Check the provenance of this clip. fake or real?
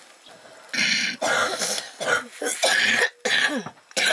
real